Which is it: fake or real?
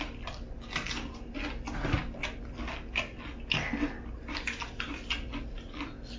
real